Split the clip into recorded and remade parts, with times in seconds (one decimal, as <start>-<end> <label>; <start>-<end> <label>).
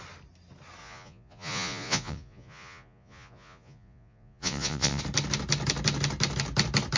0.0-0.8 recorded; 0.8-5.0 remade; 5.0-7.0 recorded